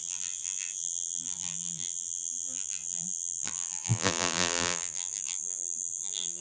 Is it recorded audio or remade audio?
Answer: remade